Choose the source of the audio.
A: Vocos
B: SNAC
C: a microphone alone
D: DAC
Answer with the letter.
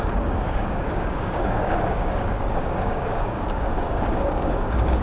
D